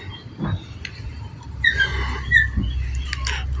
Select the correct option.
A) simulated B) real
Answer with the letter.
B